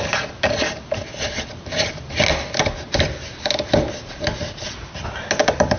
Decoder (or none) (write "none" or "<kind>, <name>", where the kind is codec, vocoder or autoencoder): none